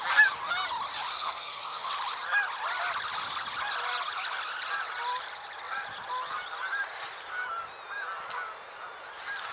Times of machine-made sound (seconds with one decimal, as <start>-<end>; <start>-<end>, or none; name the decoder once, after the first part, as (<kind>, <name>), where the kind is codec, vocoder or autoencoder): 1.1-1.9 (codec, SNAC)